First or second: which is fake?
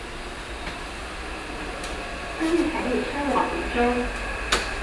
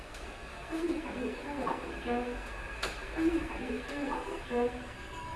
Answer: second